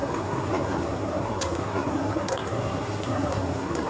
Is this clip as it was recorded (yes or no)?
no